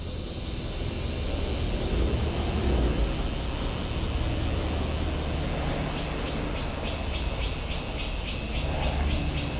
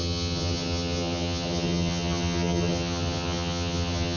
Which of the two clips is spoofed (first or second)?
second